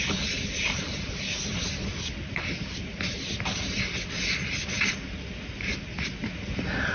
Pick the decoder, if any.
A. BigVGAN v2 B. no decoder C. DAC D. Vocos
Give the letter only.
B